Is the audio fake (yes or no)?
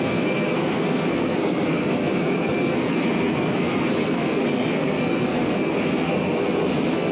yes